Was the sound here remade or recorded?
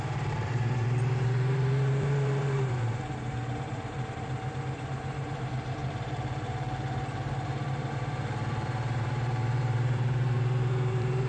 remade